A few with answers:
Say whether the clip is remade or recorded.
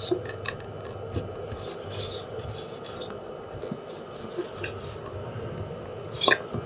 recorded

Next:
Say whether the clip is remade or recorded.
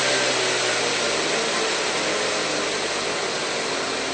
recorded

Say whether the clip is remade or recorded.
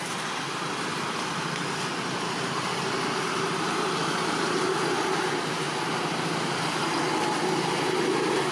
recorded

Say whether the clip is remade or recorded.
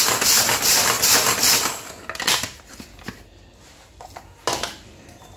recorded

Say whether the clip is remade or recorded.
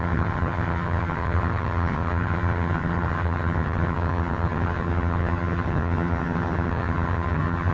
remade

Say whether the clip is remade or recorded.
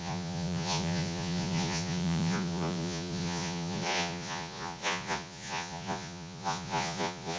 remade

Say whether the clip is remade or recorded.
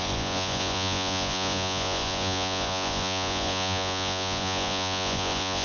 remade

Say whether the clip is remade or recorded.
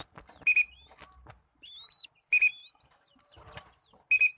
recorded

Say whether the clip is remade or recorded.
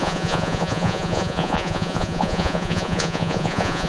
remade